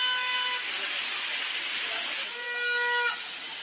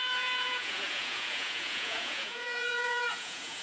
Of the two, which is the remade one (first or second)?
second